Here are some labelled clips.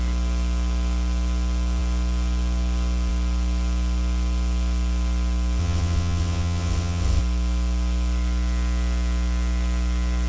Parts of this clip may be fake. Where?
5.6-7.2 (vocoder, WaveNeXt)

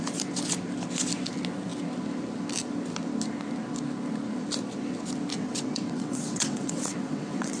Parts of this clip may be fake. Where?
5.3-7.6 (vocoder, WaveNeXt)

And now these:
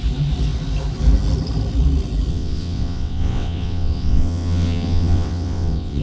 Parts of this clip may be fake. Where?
2.3-6.0 (vocoder, WaveNeXt)

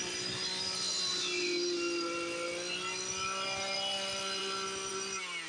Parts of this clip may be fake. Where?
none

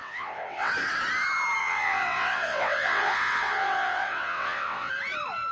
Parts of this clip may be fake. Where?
0.0-0.7 (vocoder, WaveNeXt); 1.6-4.9

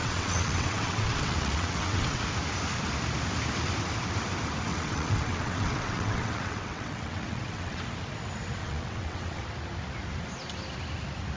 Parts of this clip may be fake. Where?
0.0-2.2 (vocoder, WaveNeXt); 4.7-7.8; 8.6-9.4

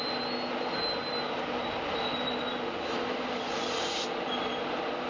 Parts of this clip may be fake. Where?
none